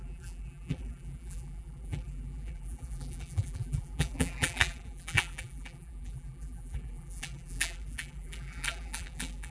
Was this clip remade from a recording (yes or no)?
yes